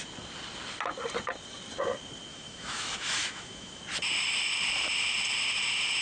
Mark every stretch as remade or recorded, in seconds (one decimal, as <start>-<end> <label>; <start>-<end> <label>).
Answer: 0.0-2.3 recorded; 2.3-3.8 remade; 3.8-6.0 recorded